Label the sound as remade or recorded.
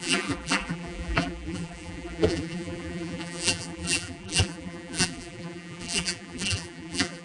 remade